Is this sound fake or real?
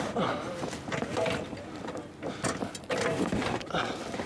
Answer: fake